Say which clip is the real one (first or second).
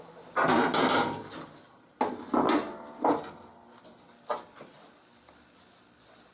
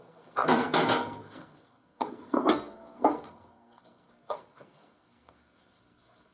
first